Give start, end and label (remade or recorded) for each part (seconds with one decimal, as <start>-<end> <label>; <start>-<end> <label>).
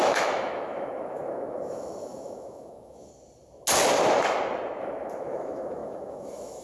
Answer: 0.0-3.1 remade; 3.1-4.8 recorded; 4.8-6.6 remade